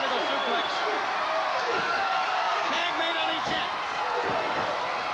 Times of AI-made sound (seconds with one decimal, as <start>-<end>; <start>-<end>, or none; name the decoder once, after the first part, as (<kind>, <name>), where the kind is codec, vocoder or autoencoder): 1.5-3.6 (codec, DAC)